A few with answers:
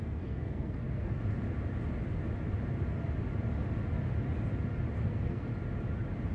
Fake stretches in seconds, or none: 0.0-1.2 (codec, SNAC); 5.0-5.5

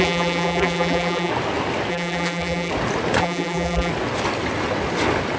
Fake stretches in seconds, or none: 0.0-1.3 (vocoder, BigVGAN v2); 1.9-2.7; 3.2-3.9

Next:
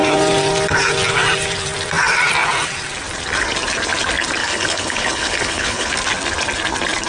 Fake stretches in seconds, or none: 4.4-5.9 (codec, HILCodec)